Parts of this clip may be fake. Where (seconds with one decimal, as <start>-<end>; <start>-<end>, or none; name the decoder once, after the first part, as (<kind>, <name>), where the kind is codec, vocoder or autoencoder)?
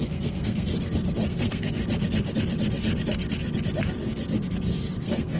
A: 0.0-0.7 (codec, SNAC); 1.3-1.8; 5.0-5.4